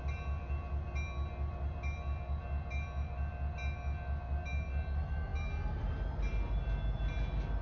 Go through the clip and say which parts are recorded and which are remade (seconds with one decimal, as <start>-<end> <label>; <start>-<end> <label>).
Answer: 0.0-7.6 recorded